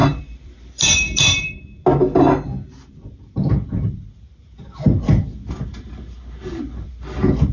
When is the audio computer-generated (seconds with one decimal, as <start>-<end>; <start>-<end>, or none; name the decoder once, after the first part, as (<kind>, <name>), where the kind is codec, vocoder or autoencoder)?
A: 0.0-1.6 (vocoder, BigVGAN v2)